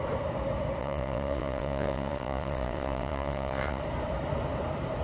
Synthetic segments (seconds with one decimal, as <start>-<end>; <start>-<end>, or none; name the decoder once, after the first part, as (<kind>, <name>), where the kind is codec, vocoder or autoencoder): 0.8-3.8 (vocoder, WaveNeXt)